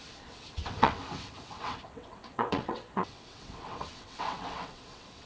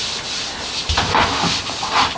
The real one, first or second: second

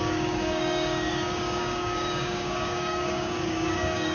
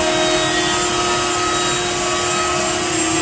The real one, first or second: second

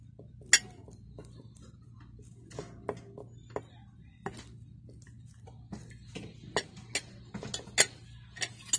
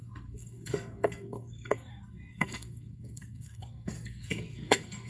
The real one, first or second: first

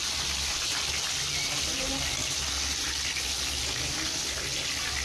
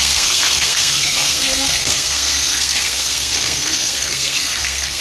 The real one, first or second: first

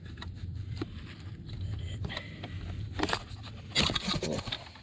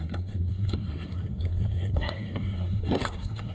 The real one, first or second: first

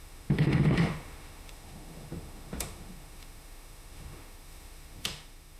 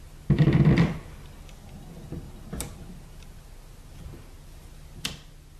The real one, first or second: second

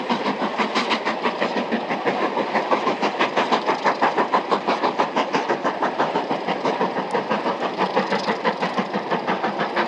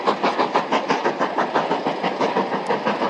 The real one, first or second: second